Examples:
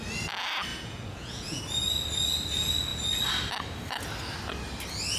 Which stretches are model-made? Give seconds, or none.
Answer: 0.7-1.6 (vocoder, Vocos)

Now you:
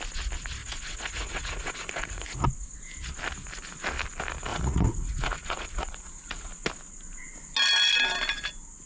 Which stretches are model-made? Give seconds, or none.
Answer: 0.6-2.4 (vocoder, Vocos); 4.5-6.5

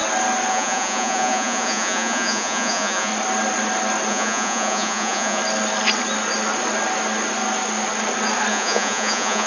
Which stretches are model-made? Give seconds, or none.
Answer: 0.5-3.1 (vocoder, Vocos); 4.1-5.4; 8.5-9.5

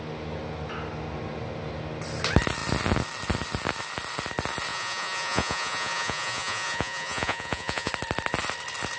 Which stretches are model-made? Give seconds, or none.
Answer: 4.7-7.9 (vocoder, Vocos)

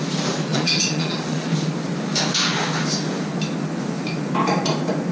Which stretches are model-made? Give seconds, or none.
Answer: 0.5-1.5 (vocoder, Vocos)

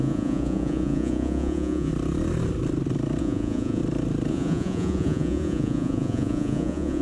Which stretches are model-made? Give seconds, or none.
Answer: 0.0-1.9 (vocoder, Vocos); 3.2-3.8; 4.3-7.0

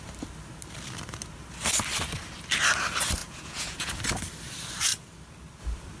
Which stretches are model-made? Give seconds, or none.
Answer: 3.2-4.0 (vocoder, Vocos)